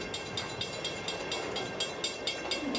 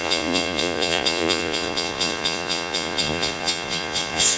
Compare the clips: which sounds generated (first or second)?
second